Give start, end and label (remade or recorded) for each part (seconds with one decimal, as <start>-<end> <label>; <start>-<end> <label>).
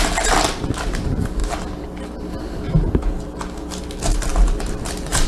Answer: 0.0-5.3 recorded